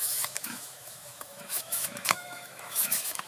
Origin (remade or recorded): remade